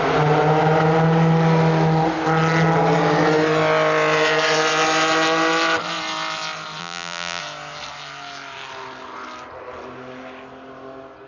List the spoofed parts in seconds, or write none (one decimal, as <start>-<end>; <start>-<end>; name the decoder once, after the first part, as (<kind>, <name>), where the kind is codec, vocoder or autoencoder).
6.8-7.4 (vocoder, BigVGAN v2)